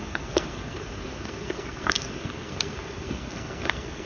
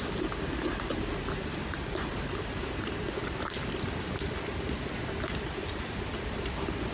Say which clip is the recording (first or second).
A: second